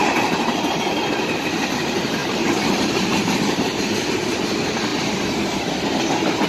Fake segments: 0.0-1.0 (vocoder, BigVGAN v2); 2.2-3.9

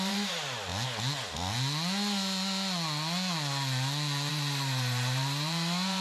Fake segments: 0.0-0.7 (vocoder, BigVGAN v2); 4.3-6.0

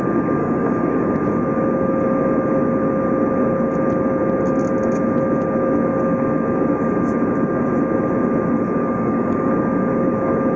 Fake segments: 0.4-1.1 (codec, DAC); 8.8-9.5

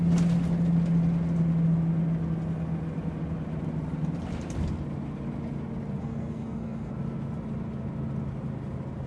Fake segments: 6.0-6.9 (codec, SNAC)

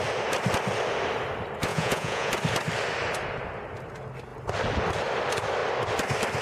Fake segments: 1.7-2.3 (vocoder, Vocos)

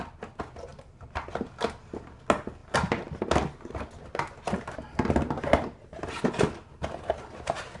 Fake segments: 0.7-1.6 (vocoder, BigVGAN v2)

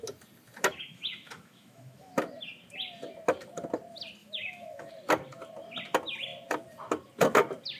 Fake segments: 0.7-2.1 (autoencoder, DAC-VAE); 4.2-4.9